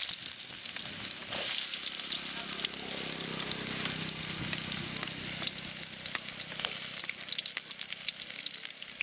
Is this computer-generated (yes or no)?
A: no